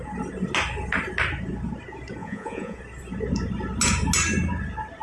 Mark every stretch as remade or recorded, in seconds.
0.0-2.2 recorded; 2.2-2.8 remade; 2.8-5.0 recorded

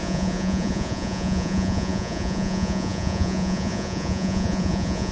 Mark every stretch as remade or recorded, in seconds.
0.0-5.1 remade

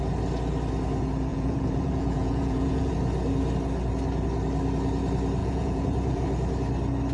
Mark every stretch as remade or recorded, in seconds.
0.0-1.3 recorded; 1.3-2.9 remade; 2.9-5.4 recorded; 5.4-6.2 remade; 6.2-7.1 recorded

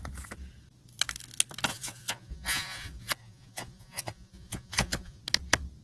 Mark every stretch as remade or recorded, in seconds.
0.0-1.7 recorded; 1.7-5.2 remade; 5.2-5.8 recorded

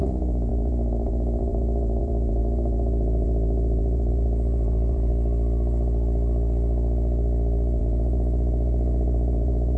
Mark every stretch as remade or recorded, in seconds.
0.0-5.1 remade; 5.1-7.8 recorded; 7.8-9.8 remade

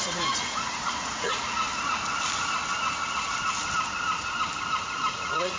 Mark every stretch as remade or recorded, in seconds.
0.0-1.7 remade; 1.7-4.8 recorded; 4.8-5.6 remade